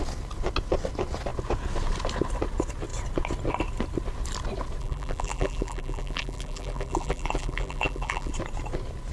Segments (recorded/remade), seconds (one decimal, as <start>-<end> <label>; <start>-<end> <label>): 0.0-4.8 recorded; 4.8-8.3 remade; 8.3-9.1 recorded